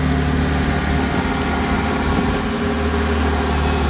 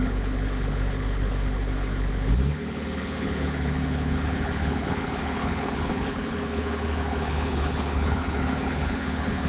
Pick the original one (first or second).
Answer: first